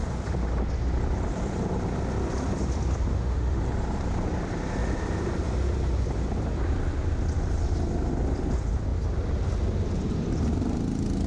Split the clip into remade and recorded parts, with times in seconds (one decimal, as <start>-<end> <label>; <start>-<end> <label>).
0.0-3.1 recorded; 3.1-3.6 remade; 3.6-11.3 recorded